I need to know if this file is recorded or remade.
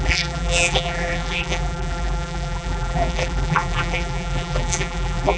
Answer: remade